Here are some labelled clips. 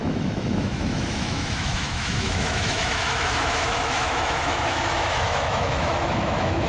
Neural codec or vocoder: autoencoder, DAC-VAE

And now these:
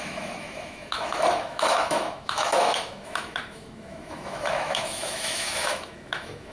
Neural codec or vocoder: autoencoder, DAC-VAE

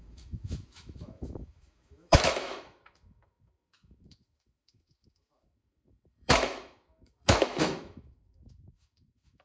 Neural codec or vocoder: autoencoder, DAC-VAE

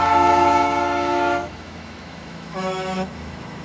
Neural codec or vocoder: autoencoder, DAC-VAE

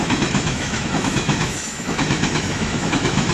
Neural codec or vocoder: autoencoder, DAC-VAE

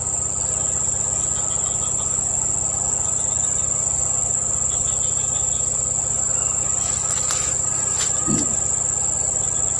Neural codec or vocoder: none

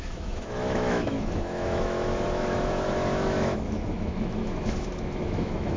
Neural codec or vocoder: autoencoder, DAC-VAE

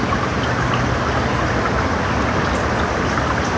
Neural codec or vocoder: none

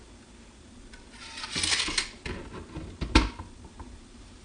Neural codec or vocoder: none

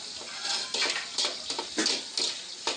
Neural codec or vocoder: none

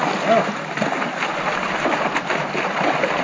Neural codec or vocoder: none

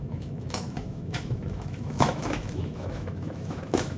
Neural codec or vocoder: autoencoder, DAC-VAE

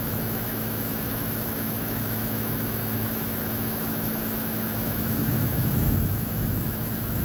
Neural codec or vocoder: autoencoder, DAC-VAE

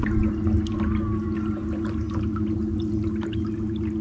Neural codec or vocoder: none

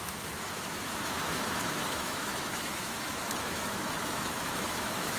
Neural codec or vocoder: autoencoder, DAC-VAE